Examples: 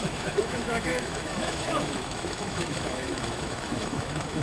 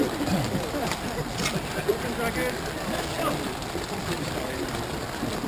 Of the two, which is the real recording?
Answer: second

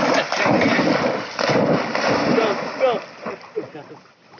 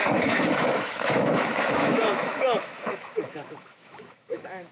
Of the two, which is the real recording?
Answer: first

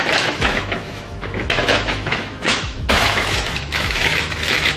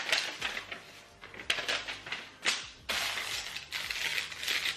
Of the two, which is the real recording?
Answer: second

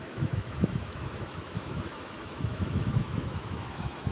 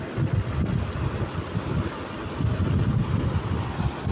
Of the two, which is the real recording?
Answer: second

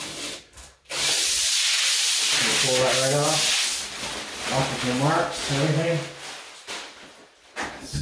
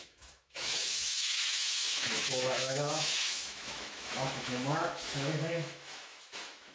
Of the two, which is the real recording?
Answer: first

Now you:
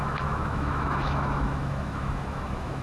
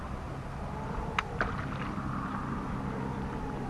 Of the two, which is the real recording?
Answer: second